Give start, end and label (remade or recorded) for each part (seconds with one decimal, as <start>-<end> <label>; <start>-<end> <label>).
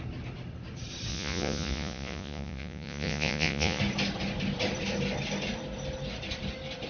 0.0-1.1 recorded; 1.1-3.8 remade; 3.8-6.9 recorded